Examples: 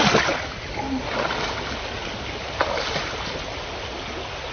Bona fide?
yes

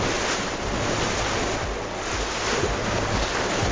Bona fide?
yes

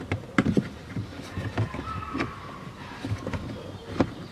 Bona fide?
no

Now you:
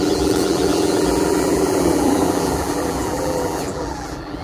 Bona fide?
no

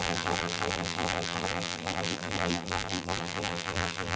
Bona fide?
no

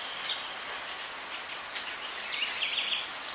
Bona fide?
yes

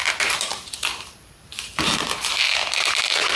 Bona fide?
no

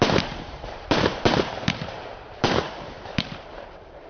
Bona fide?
no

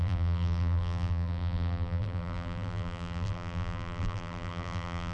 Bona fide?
no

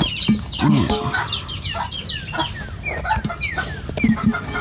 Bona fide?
yes